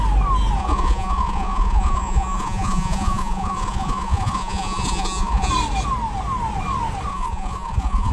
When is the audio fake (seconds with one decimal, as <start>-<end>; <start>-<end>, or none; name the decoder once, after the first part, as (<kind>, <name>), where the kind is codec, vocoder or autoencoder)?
0.6-5.5 (vocoder, Vocos); 7.1-8.1